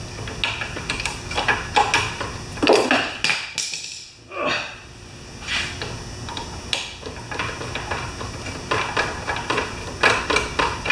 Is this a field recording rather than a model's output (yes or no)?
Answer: yes